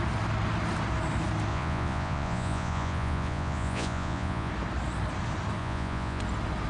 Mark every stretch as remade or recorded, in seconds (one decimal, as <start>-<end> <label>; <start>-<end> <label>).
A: 0.0-1.5 recorded; 1.5-4.5 remade; 4.5-5.6 recorded; 5.6-6.2 remade; 6.2-6.7 recorded